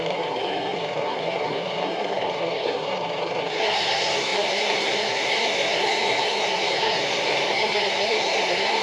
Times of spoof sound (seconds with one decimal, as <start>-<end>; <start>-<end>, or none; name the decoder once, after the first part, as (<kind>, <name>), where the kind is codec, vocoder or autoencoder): 0.0-8.8 (codec, SNAC)